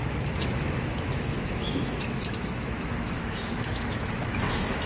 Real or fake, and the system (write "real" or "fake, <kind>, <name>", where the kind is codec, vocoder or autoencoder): fake, autoencoder, DAC-VAE